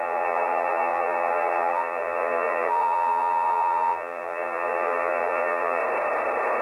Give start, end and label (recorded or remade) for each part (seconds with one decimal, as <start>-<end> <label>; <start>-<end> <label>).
0.0-5.8 remade; 5.8-6.6 recorded